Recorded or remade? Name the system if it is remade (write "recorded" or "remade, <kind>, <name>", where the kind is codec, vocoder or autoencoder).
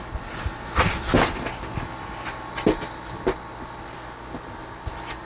recorded